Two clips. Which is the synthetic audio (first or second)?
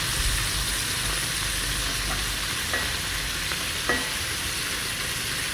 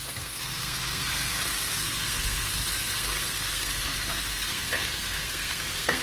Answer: second